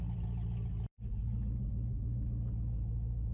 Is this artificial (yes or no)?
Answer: no